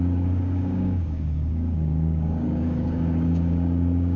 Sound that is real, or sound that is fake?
fake